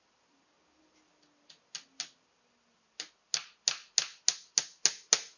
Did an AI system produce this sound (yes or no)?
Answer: no